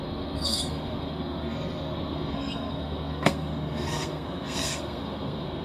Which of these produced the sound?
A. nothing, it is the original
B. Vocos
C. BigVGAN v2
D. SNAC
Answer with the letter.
D